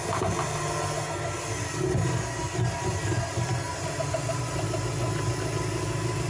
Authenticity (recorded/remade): recorded